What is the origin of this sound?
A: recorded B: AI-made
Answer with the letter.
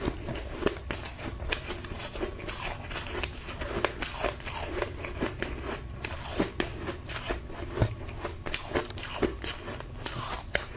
A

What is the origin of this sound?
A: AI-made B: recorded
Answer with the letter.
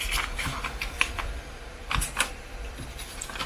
A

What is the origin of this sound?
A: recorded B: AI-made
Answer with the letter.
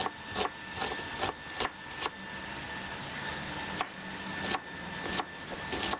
A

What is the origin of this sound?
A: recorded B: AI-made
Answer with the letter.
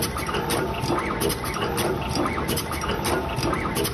A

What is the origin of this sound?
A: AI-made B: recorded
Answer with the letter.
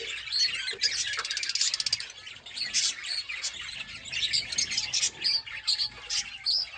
B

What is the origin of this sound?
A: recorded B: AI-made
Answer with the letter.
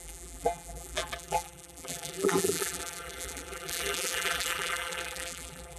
B